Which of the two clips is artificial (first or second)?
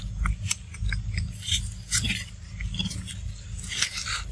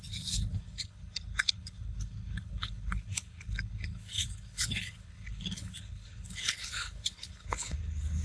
second